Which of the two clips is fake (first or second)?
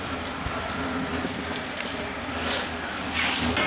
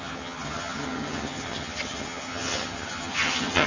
second